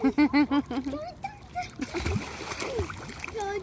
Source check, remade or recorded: recorded